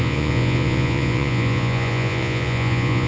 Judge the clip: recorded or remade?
remade